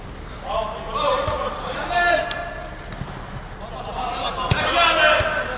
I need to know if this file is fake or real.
real